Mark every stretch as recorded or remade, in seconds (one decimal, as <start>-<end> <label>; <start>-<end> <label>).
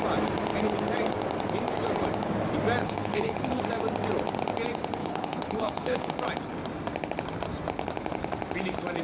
0.0-2.8 recorded; 2.8-3.6 remade; 3.6-5.0 recorded; 5.0-6.1 remade; 6.1-9.0 recorded